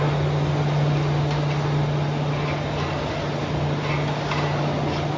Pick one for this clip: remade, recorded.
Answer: recorded